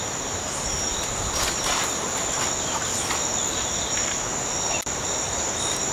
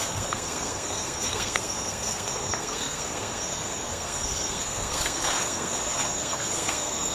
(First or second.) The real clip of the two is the first